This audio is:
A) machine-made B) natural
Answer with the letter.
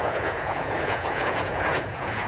A